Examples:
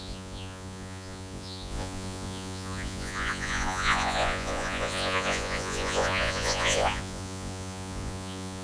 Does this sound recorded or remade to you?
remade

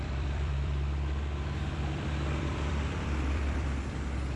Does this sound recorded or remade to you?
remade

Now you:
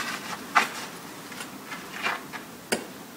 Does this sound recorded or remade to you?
recorded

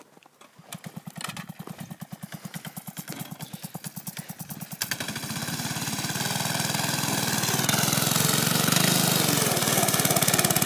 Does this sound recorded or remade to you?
recorded